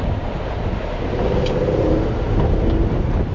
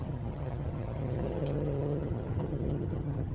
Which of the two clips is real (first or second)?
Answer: first